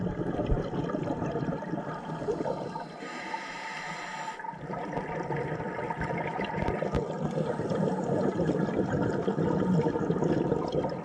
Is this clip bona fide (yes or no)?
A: yes